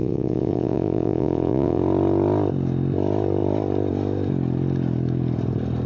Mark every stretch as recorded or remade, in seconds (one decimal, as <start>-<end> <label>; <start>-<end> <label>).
0.0-1.8 remade; 1.8-5.9 recorded